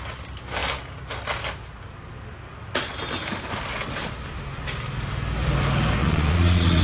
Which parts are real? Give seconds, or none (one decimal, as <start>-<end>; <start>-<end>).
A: 0.0-6.0